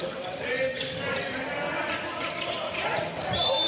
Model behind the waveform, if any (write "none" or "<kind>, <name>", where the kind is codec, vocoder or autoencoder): none